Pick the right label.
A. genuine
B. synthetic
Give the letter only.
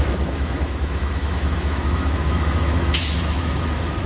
B